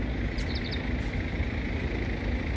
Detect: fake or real real